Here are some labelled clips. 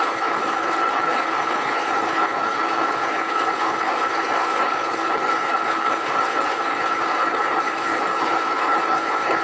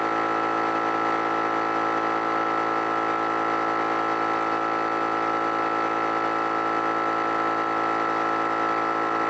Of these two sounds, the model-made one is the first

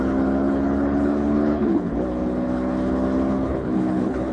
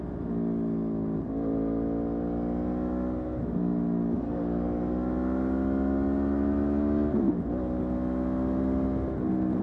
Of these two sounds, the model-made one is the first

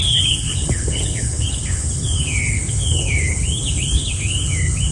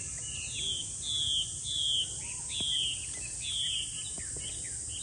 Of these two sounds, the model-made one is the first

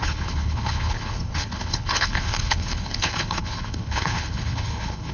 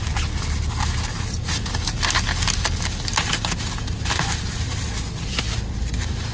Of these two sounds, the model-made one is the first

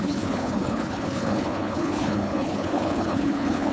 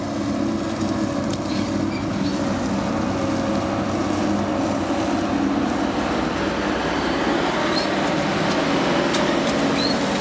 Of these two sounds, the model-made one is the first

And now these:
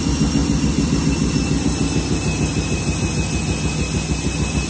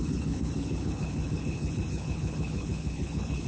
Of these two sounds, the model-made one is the second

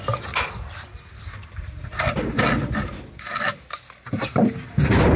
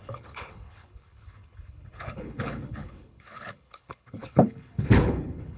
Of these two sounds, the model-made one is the second